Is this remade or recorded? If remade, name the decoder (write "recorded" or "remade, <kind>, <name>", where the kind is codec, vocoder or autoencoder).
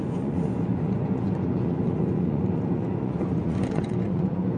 remade, vocoder, Vocos